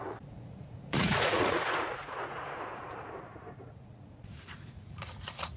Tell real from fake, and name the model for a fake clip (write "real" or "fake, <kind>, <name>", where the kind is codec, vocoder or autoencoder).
fake, vocoder, Vocos